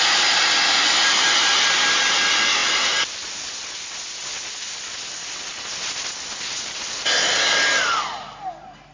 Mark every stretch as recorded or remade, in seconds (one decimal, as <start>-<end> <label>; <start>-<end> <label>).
0.0-8.9 recorded